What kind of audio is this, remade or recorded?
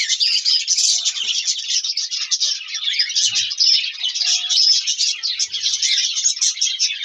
recorded